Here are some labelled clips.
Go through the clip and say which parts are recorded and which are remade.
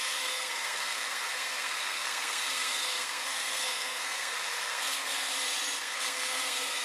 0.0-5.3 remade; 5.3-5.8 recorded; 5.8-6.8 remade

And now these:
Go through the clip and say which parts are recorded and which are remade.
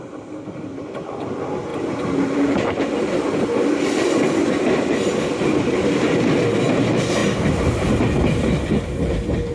0.0-1.7 recorded; 1.7-2.8 remade; 2.8-7.2 recorded; 7.2-7.7 remade; 7.7-9.5 recorded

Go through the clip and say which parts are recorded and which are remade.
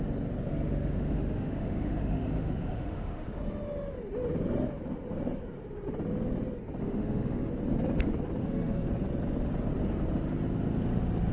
0.0-0.5 recorded; 0.5-3.4 remade; 3.4-6.8 recorded; 6.8-7.5 remade; 7.5-8.4 recorded; 8.4-8.9 remade; 8.9-11.3 recorded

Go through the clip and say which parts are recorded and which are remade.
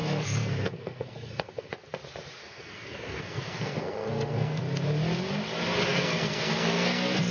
0.0-1.7 remade; 1.7-2.4 recorded; 2.4-4.6 remade; 4.6-5.9 recorded; 5.9-7.3 remade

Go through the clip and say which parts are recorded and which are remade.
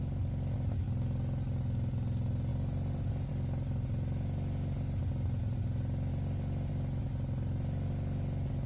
0.0-2.5 recorded; 2.5-3.3 remade; 3.3-8.7 recorded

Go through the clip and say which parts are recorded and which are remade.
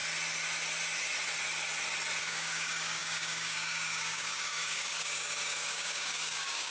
0.0-2.2 recorded; 2.2-6.7 remade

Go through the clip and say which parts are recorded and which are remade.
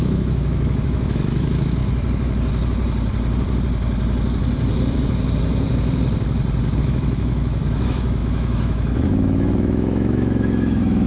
0.0-1.8 remade; 1.8-6.8 recorded; 6.8-11.1 remade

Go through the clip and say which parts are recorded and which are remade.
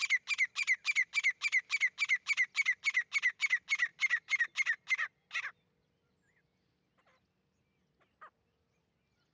0.0-0.6 recorded; 0.6-1.2 remade; 1.2-3.9 recorded; 3.9-4.4 remade; 4.4-9.3 recorded